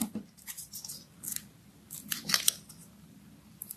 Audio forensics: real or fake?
real